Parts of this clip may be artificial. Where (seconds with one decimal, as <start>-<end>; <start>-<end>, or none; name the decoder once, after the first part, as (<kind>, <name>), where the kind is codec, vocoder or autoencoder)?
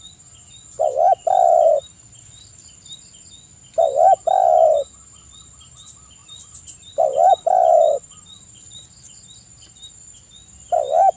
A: 1.2-3.0 (vocoder, BigVGAN v2); 6.2-9.9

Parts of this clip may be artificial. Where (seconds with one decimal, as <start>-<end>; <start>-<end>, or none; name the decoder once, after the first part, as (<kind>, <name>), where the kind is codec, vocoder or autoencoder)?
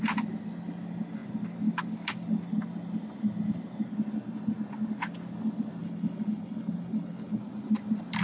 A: 5.8-7.4 (codec, HILCodec)